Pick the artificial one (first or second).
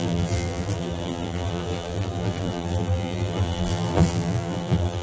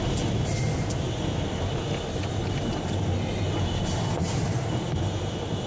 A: first